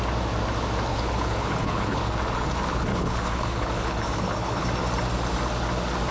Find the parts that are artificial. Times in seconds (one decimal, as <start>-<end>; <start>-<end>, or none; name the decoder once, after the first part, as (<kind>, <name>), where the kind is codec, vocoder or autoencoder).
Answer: 0.9-2.0 (codec, HILCodec); 2.9-4.6